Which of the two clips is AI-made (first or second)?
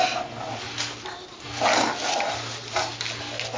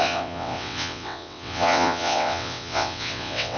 second